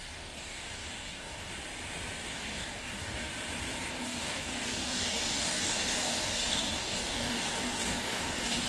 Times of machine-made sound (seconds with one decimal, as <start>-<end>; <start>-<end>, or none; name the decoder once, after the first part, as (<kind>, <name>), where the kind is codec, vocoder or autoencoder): 0.0-1.5 (codec, DAC); 2.3-3.3; 3.9-8.7